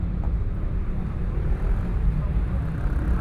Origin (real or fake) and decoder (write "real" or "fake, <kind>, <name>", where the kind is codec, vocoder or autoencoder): fake, vocoder, BigVGAN v2